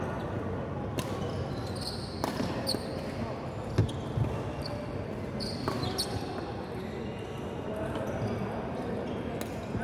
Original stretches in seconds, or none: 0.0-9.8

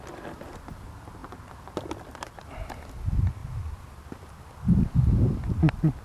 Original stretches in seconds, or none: 0.0-6.0

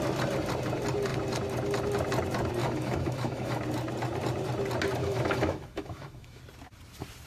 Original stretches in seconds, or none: 0.0-2.6; 3.6-5.0; 6.4-7.3

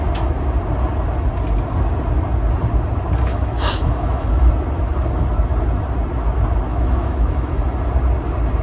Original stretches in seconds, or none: 0.0-3.3; 4.5-6.7; 7.6-8.6